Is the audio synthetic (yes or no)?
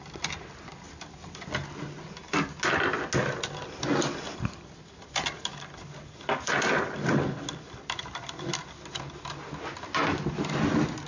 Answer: no